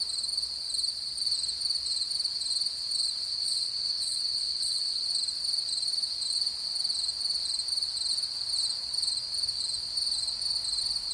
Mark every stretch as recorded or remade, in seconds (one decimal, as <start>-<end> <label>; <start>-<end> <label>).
0.0-3.3 recorded; 3.3-5.1 remade; 5.1-11.1 recorded